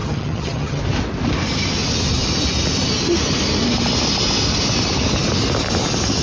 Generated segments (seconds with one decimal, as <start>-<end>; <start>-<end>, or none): 0.0-0.8